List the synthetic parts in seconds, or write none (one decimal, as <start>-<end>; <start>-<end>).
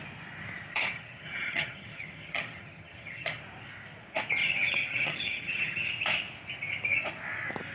0.7-3.4; 4.4-5.9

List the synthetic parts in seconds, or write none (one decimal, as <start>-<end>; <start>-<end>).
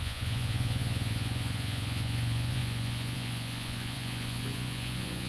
0.0-5.3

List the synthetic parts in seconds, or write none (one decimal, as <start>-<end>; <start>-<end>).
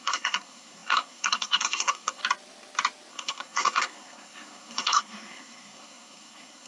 0.0-2.2; 3.1-6.7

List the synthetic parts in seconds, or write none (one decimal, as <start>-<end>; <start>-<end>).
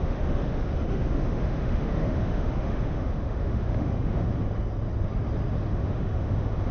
0.0-4.3; 5.7-6.7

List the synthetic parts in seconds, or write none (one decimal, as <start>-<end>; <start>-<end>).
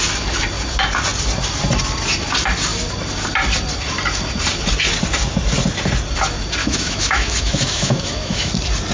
6.6-8.5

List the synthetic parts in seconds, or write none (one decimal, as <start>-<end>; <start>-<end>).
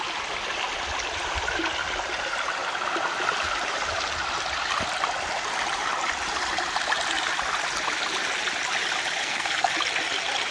9.2-9.7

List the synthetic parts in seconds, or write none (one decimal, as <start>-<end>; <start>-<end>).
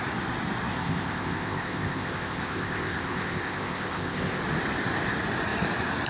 0.7-4.4